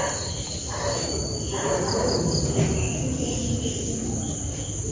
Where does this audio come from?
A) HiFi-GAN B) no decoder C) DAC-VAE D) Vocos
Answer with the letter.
B